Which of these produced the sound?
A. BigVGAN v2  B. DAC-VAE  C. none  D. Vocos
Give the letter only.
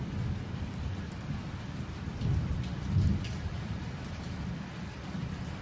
A